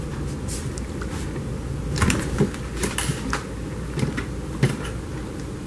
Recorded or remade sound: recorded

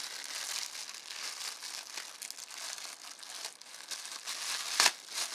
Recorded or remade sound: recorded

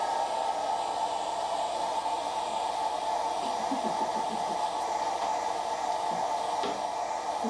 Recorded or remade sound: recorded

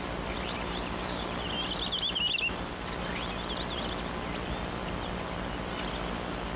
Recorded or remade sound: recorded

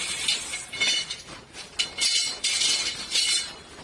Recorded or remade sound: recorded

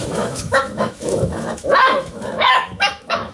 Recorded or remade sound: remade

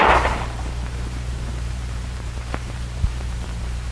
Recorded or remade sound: remade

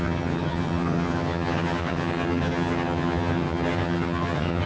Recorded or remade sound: remade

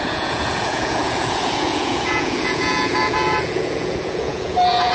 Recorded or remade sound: remade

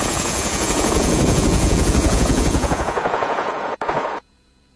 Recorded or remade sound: remade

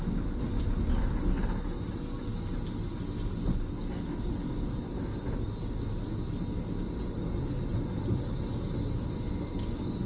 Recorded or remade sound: recorded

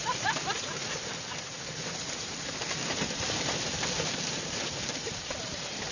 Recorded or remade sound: remade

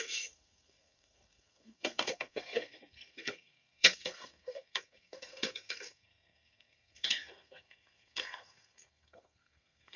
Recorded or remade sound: remade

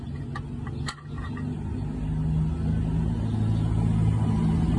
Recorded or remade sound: recorded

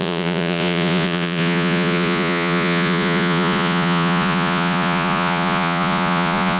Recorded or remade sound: remade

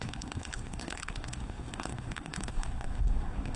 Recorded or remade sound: remade